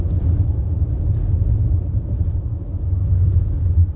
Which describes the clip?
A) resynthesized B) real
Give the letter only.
B